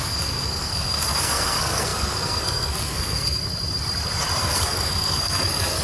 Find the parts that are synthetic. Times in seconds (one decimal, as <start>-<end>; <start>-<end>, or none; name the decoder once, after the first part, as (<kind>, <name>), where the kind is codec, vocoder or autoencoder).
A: 0.0-3.4 (codec, SNAC); 4.4-5.8